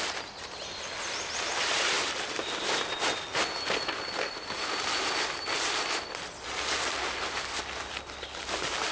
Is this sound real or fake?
real